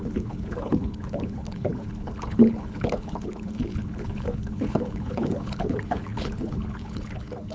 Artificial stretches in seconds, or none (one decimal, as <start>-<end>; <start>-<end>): 0.0-7.5